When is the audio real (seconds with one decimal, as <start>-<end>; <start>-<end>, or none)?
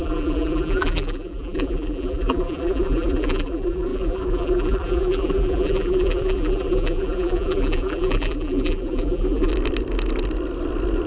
9.5-11.1